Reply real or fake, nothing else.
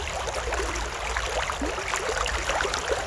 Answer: fake